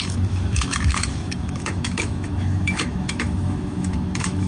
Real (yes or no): no